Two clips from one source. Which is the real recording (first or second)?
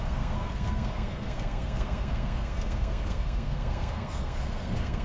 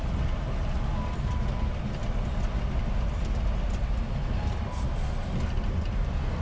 second